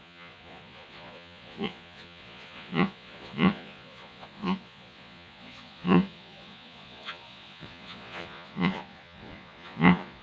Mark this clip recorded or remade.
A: remade